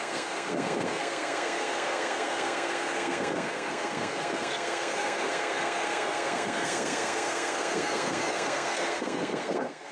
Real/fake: fake